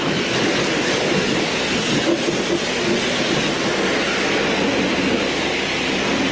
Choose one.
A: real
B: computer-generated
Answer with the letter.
A